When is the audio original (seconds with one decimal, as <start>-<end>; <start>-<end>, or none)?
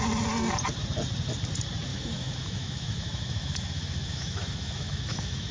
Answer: 0.0-1.9